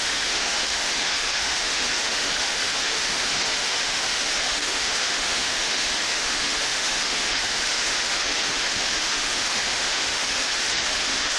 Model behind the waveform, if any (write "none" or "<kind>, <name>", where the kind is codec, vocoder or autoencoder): autoencoder, DAC-VAE